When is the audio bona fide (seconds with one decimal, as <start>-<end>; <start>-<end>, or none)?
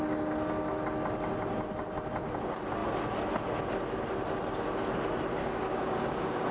0.0-5.4